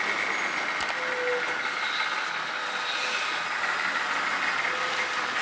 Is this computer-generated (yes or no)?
no